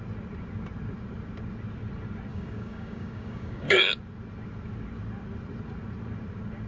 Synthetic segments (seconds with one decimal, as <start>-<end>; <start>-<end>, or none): 2.3-4.0